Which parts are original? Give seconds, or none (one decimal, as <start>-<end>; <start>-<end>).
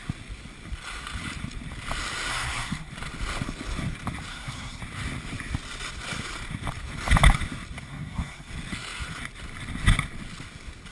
0.0-2.3; 2.9-4.3; 4.8-7.9; 8.5-10.9